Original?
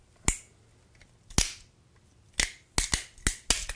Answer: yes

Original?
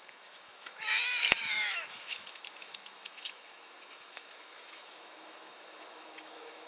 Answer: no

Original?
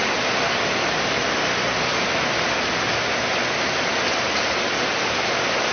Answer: yes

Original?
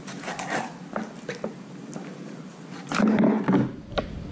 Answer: yes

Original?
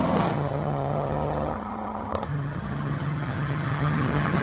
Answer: no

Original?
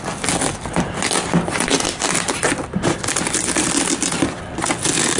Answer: yes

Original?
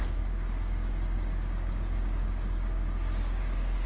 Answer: no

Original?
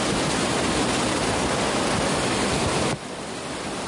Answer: yes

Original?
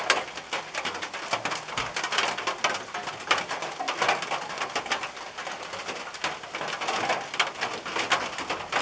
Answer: yes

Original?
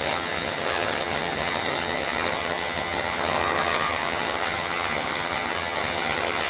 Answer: no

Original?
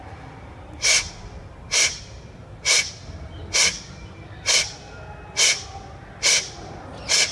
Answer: yes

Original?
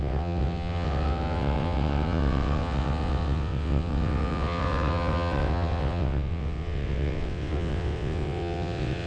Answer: no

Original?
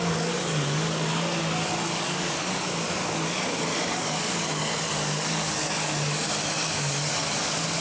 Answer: no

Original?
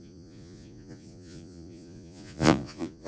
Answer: no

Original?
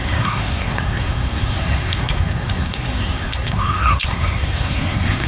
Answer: no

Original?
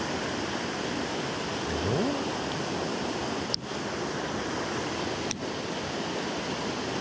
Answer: yes